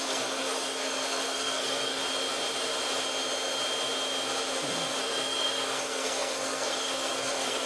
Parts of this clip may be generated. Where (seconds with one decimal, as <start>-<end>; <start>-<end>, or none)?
0.0-2.0; 5.0-7.7